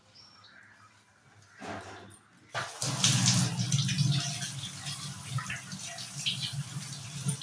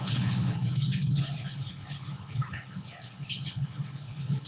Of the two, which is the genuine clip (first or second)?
first